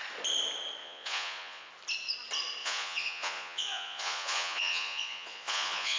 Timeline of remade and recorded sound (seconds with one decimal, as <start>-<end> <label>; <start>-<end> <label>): 0.0-0.8 recorded; 0.8-1.7 remade; 1.7-2.6 recorded; 2.6-6.0 remade